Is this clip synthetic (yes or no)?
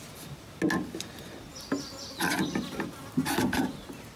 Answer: no